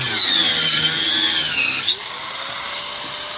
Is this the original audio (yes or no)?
yes